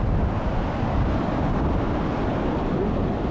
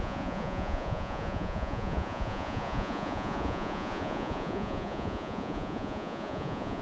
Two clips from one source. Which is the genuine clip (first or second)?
first